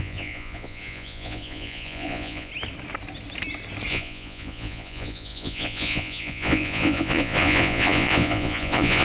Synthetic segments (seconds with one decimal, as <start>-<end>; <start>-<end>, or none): 0.0-2.5; 3.9-9.0